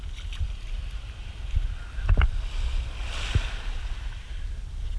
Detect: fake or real real